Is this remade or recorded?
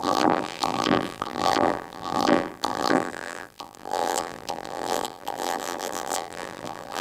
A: remade